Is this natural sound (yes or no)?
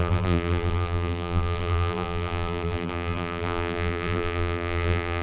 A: no